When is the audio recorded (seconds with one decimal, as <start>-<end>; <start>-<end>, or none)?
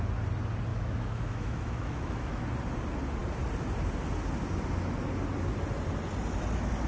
0.0-0.7; 2.4-6.9